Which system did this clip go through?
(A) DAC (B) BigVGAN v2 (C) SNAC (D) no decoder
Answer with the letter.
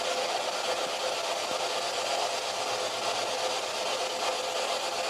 D